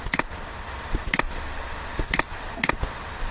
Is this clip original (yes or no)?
yes